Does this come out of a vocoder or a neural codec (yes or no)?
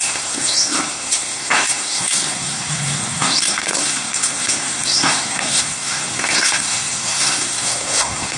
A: yes